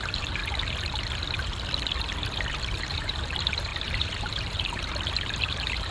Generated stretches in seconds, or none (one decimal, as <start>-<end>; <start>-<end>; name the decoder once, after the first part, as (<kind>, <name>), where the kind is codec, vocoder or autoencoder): 0.0-0.4 (vocoder, BigVGAN v2); 2.6-5.9